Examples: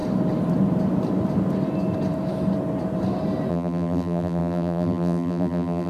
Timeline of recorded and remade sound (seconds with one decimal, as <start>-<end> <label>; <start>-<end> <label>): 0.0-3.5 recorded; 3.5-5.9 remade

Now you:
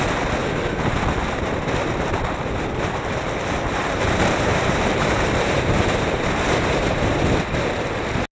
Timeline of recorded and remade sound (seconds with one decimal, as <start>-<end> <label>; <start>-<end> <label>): 0.0-0.4 recorded; 0.4-1.0 remade; 1.0-3.8 recorded; 3.8-7.1 remade; 7.1-8.3 recorded

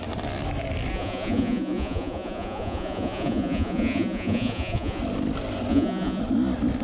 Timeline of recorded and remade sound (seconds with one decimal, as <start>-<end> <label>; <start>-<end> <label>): 0.0-0.9 recorded; 0.9-5.0 remade; 5.0-5.7 recorded; 5.7-6.2 remade; 6.2-6.8 recorded

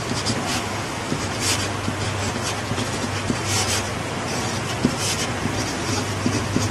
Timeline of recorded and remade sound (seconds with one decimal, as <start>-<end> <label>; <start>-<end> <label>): 0.0-0.5 recorded; 0.5-1.3 remade; 1.3-6.7 recorded

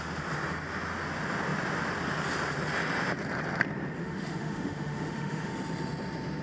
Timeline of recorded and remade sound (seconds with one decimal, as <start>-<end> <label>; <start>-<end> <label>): 0.0-4.0 recorded; 4.0-5.5 remade; 5.5-6.4 recorded